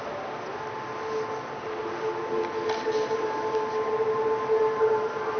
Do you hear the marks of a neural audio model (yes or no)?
no